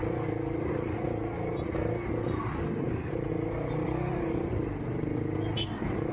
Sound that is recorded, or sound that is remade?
recorded